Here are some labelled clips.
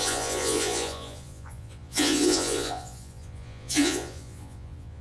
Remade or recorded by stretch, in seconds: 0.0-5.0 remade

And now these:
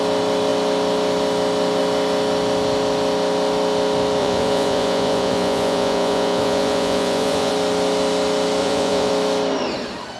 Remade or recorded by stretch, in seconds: 0.0-4.2 recorded; 4.2-7.5 remade; 7.5-8.6 recorded; 8.6-9.1 remade; 9.1-10.2 recorded

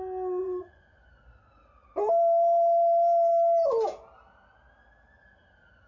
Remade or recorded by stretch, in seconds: 0.0-0.4 recorded; 0.4-1.1 remade; 1.1-5.9 recorded

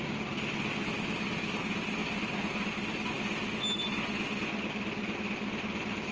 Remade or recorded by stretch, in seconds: 0.0-6.1 recorded

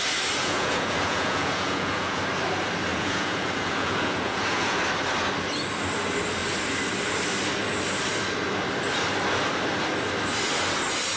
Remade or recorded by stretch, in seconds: 0.0-0.4 recorded; 0.4-2.2 remade; 2.2-2.9 recorded; 2.9-4.8 remade; 4.8-11.2 recorded

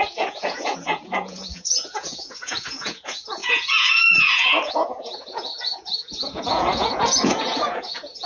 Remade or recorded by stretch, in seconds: 0.0-8.3 remade

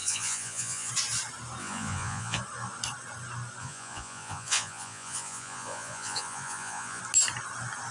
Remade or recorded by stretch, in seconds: 0.0-0.9 remade; 0.9-1.6 recorded; 1.6-2.4 remade; 2.4-3.6 recorded; 3.6-7.0 remade; 7.0-7.9 recorded